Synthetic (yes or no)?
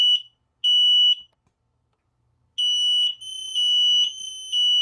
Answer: no